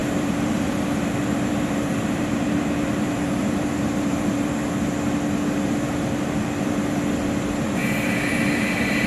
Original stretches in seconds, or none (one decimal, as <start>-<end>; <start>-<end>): 4.5-9.1